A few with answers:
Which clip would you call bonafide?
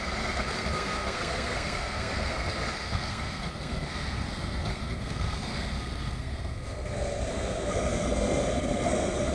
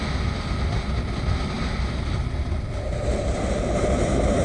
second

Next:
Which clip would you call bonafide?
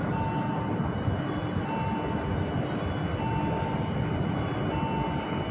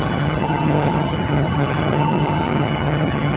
first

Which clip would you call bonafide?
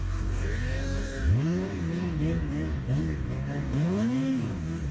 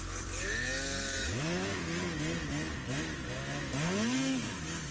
second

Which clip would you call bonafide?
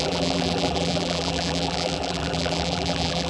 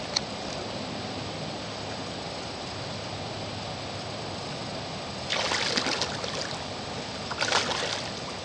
second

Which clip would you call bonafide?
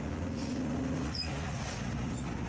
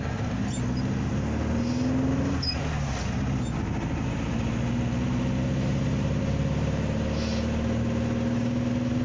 second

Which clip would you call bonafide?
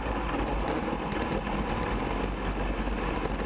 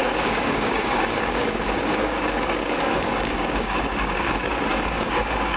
first